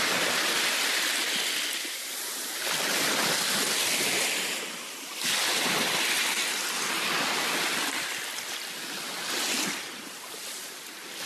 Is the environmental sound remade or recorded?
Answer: recorded